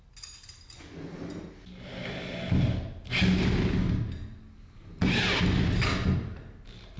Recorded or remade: recorded